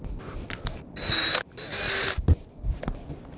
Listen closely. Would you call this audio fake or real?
real